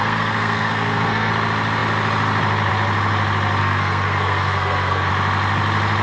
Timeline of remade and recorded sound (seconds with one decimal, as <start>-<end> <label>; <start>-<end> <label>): 0.0-1.3 remade; 1.3-3.6 recorded; 3.6-5.1 remade; 5.1-6.0 recorded